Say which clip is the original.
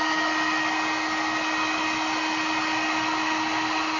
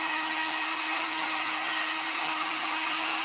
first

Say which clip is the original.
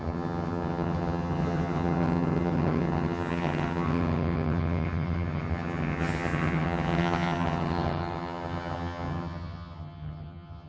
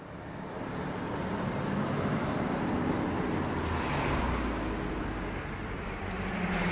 second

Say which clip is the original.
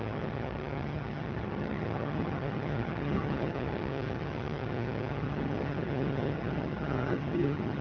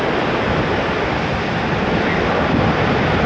second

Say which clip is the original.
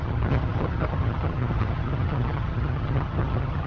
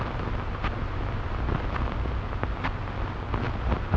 second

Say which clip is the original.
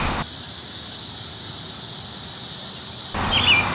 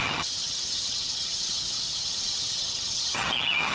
first